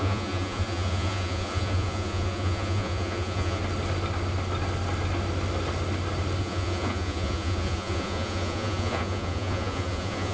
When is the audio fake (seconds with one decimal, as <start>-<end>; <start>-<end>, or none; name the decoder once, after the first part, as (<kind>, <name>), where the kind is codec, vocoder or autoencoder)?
0.0-3.6 (vocoder, Vocos); 6.4-10.3